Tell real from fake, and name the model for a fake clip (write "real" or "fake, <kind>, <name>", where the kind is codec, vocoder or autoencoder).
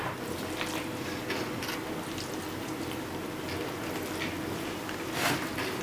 real